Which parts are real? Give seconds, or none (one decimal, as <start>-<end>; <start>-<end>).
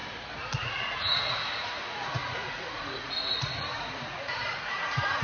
0.0-0.6